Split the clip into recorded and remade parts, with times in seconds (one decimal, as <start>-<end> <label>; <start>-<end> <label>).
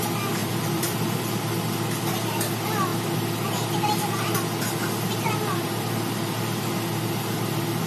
0.0-0.4 recorded; 0.4-1.3 remade; 1.3-7.9 recorded